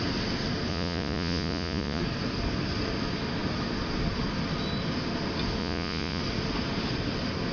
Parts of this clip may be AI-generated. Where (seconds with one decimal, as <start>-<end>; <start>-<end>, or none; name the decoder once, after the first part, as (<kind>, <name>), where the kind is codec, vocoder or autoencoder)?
0.7-2.0 (vocoder, Vocos); 5.6-6.2